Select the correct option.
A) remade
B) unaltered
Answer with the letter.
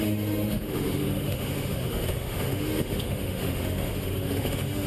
A